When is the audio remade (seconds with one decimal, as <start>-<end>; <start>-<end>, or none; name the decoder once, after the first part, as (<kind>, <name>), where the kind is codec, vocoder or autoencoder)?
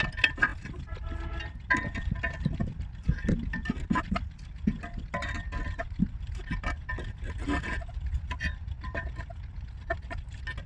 none